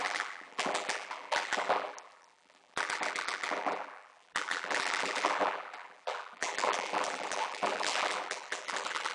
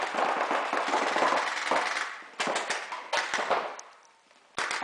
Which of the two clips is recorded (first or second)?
second